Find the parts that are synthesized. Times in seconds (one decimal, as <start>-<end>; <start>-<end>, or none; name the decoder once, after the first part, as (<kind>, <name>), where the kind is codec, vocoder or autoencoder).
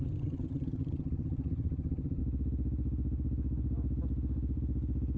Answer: 0.0-2.2 (vocoder, HiFi-GAN)